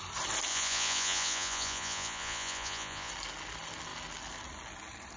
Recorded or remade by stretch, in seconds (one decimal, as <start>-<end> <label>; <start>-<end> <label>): 0.0-0.5 recorded; 0.5-3.1 remade; 3.1-5.2 recorded